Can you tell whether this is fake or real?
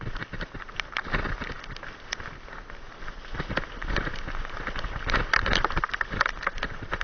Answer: real